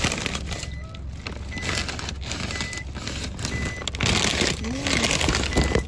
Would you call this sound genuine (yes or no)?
yes